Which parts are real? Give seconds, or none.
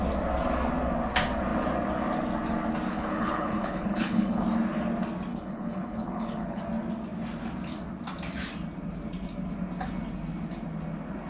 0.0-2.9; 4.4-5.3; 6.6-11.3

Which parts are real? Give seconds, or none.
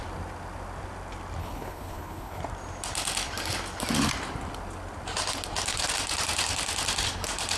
0.0-1.4; 2.4-7.6